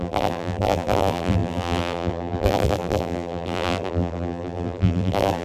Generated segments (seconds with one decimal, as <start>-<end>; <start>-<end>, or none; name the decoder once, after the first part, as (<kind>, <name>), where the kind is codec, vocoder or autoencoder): 0.0-5.4 (vocoder, BigVGAN v2)